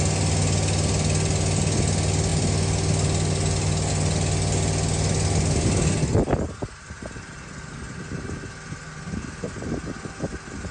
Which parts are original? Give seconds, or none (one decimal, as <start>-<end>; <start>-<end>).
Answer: 0.0-10.7